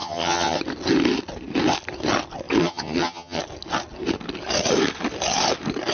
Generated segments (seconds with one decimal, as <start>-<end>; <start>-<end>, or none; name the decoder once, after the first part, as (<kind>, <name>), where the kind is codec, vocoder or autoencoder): 0.0-0.6 (vocoder, HiFi-GAN); 2.6-3.4